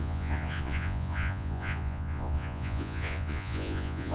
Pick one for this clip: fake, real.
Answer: fake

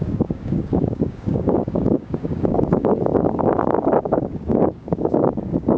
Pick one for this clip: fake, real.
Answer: fake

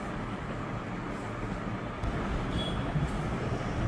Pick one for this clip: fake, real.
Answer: real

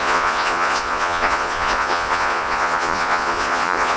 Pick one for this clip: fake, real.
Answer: fake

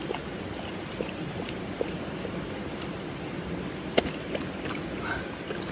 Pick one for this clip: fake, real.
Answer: real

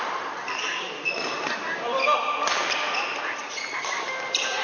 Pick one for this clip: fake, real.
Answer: real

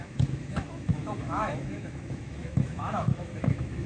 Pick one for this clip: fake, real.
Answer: fake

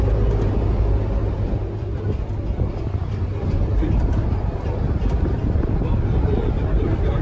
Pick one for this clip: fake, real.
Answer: real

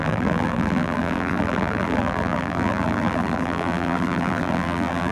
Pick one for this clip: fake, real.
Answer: fake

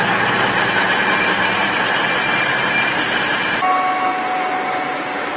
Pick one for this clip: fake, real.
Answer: real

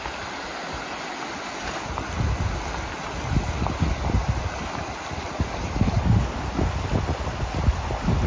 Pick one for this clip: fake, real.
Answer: real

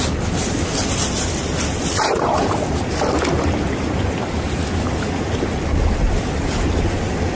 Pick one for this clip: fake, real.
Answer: real